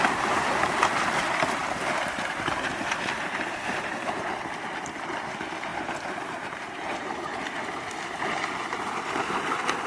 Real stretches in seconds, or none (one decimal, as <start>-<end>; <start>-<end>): 0.0-1.6; 4.2-5.7; 7.4-9.9

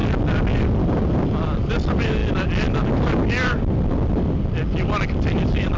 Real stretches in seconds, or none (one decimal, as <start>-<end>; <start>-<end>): 0.0-5.8

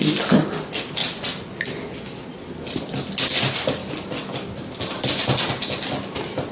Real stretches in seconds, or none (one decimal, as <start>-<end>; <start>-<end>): 0.0-3.8; 5.6-6.5

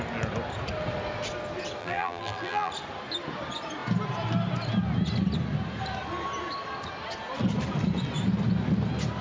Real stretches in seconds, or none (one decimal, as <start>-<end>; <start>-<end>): 0.0-1.8; 2.7-9.2

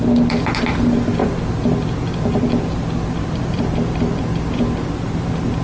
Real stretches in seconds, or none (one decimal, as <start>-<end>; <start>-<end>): 0.0-1.2; 2.4-3.0; 3.7-5.6

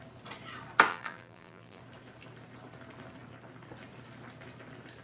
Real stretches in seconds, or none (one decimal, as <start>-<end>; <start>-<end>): 0.0-0.9; 1.8-5.0